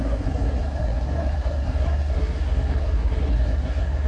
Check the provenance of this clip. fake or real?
fake